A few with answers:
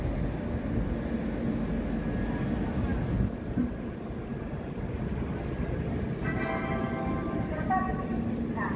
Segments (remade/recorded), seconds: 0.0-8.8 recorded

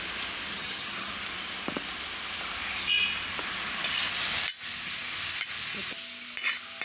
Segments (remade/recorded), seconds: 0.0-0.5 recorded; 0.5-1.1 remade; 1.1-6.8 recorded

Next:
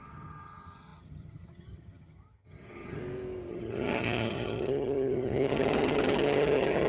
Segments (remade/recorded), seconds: 0.0-3.0 remade; 3.0-3.5 recorded; 3.5-6.9 remade